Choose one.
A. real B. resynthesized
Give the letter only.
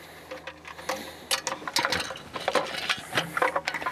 A